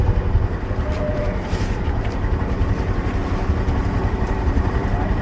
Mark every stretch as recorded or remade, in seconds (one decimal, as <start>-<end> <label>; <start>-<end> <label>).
0.0-1.2 recorded; 1.2-2.6 remade; 2.6-3.7 recorded; 3.7-5.2 remade